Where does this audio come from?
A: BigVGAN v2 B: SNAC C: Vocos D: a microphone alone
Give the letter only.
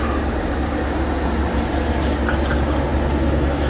D